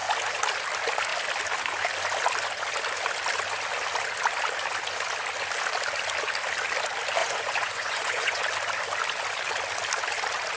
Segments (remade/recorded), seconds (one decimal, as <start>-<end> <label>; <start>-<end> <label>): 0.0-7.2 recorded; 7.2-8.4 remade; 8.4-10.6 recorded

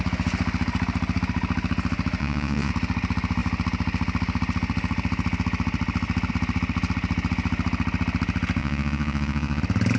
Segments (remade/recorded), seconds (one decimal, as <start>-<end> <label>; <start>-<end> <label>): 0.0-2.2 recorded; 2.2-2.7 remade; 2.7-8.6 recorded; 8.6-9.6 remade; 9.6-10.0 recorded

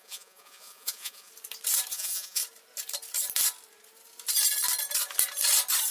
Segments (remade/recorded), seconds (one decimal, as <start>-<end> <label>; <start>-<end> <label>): 0.0-1.3 remade; 1.3-1.9 recorded; 1.9-2.4 remade; 2.4-5.9 recorded